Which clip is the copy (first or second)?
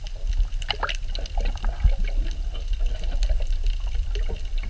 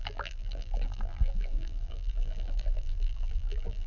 second